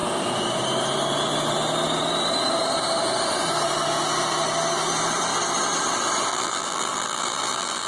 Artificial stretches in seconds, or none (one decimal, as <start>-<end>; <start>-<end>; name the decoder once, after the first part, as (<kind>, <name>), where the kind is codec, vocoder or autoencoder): 6.3-7.9 (vocoder, BigVGAN v2)